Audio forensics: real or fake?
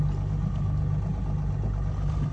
real